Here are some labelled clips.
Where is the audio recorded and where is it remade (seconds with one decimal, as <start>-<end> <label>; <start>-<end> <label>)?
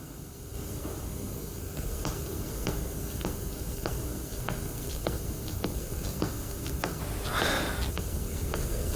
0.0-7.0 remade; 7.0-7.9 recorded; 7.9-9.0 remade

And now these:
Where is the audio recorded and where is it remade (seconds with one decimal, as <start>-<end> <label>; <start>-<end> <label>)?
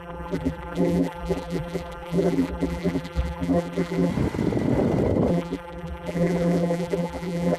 0.0-4.1 remade; 4.1-5.3 recorded; 5.3-7.6 remade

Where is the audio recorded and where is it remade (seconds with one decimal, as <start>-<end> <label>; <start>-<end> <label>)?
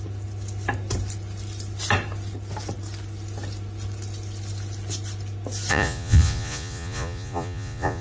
0.0-5.7 recorded; 5.7-8.0 remade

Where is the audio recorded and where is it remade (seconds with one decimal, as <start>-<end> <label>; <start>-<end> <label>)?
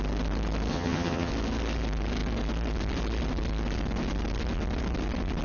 0.0-0.7 recorded; 0.7-1.3 remade; 1.3-5.4 recorded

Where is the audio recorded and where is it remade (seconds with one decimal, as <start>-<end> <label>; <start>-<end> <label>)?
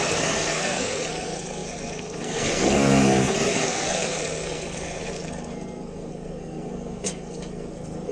0.0-8.1 remade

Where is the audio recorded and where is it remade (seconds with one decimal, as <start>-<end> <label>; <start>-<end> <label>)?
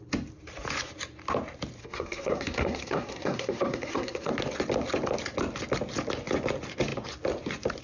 0.0-1.8 recorded; 1.8-4.3 remade; 4.3-7.8 recorded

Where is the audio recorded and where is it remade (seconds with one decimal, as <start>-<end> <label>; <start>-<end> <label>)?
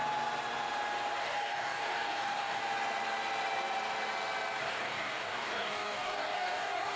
0.0-1.2 recorded; 1.2-2.6 remade; 2.6-4.6 recorded; 4.6-7.0 remade